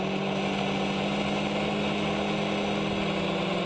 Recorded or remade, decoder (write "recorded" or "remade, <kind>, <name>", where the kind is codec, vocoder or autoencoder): recorded